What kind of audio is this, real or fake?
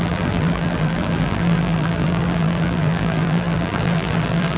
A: fake